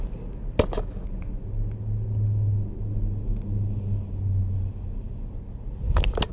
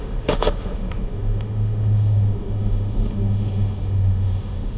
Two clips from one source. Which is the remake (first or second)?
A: second